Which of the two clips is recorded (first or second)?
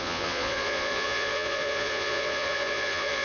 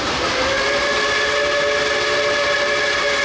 second